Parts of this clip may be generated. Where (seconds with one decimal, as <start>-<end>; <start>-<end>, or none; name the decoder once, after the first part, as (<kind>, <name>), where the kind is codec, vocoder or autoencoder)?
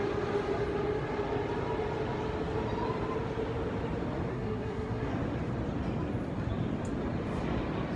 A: 4.3-5.1 (codec, SNAC)